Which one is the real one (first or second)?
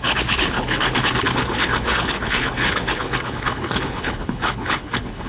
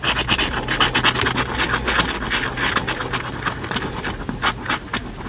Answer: second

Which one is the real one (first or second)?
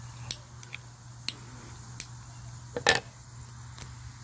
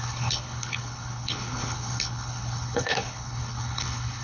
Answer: first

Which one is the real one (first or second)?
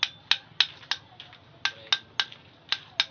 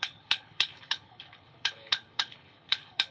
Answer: first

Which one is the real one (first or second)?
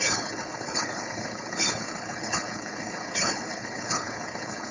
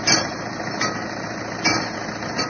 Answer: second